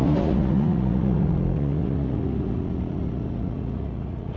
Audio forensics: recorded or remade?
remade